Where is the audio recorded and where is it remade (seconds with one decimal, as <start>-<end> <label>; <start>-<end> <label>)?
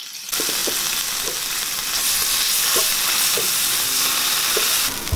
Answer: 0.0-5.2 recorded